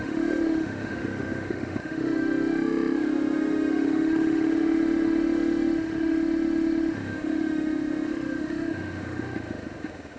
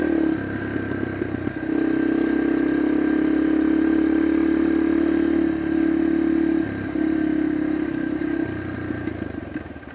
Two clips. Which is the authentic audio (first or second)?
second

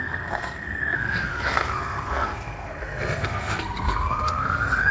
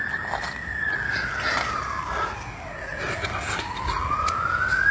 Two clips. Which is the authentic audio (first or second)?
second